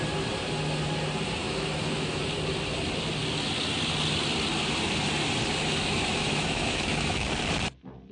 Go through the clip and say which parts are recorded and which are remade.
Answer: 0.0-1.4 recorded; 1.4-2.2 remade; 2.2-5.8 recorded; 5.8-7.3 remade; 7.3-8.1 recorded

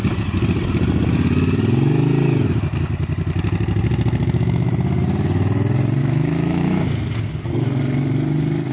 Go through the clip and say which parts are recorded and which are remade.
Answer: 0.0-4.2 recorded; 4.2-4.7 remade; 4.7-6.0 recorded; 6.0-6.8 remade; 6.8-8.7 recorded

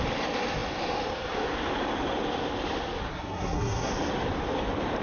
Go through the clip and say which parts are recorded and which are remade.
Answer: 0.0-3.1 recorded; 3.1-3.9 remade; 3.9-5.0 recorded

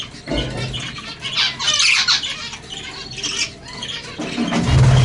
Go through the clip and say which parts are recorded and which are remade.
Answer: 0.0-5.0 recorded

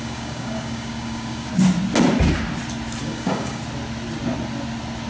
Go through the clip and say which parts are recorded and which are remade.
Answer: 0.0-1.5 remade; 1.5-3.0 recorded; 3.0-3.6 remade; 3.6-5.1 recorded

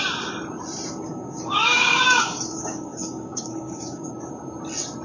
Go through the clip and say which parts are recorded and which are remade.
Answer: 0.0-1.1 recorded; 1.1-4.1 remade; 4.1-5.0 recorded